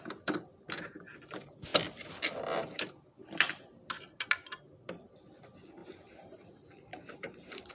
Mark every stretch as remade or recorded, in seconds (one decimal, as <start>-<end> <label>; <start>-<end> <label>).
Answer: 0.0-5.8 recorded; 5.8-6.5 remade; 6.5-6.9 recorded; 6.9-7.7 remade